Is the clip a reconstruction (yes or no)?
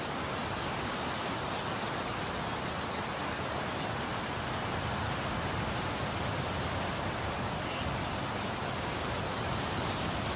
no